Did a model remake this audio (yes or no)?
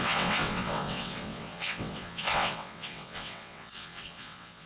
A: yes